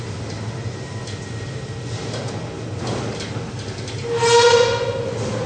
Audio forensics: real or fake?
real